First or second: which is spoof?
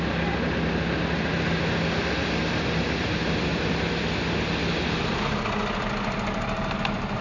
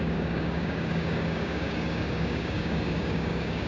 second